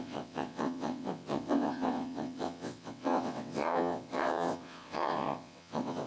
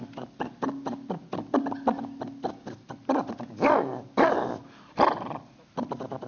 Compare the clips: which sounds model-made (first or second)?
first